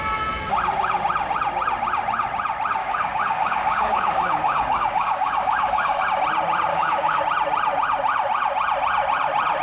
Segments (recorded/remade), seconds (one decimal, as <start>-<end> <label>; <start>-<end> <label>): 0.0-2.8 recorded; 2.8-6.0 remade; 6.0-6.7 recorded; 6.7-7.2 remade; 7.2-9.6 recorded